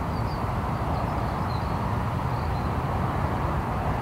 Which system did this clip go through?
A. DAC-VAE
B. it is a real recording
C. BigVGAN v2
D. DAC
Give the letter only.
C